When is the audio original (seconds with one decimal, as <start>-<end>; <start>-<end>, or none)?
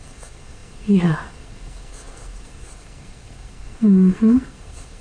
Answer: none